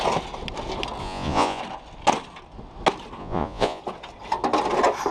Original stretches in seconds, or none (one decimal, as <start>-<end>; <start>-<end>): 0.0-1.0; 1.6-3.2; 3.8-5.1